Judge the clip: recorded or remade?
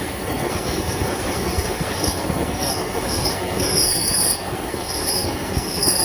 remade